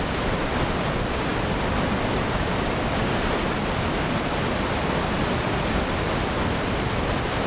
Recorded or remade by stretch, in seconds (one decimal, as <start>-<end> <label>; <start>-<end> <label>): 0.0-7.5 recorded